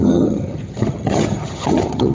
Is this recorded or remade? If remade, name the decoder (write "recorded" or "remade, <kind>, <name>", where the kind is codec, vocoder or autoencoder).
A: remade, vocoder, HiFi-GAN